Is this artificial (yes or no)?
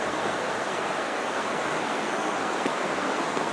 yes